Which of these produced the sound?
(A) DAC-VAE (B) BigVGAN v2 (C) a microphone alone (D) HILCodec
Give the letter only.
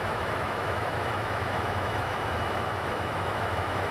A